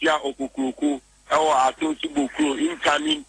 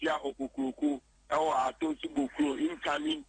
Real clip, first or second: first